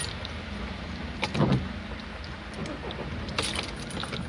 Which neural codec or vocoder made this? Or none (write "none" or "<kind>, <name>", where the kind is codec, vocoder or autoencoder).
none